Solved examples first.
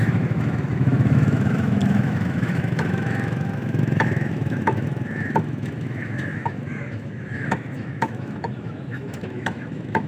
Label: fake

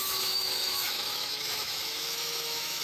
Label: fake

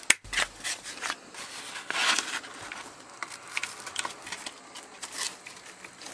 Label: real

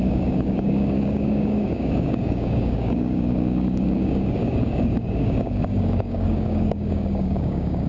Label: fake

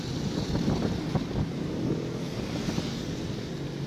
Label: real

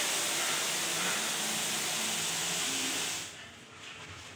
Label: real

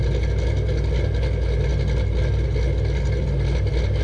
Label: real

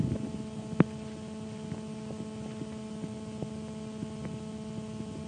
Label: real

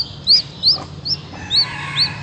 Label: real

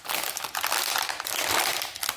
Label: real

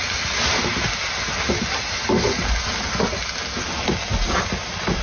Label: real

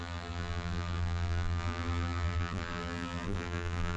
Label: fake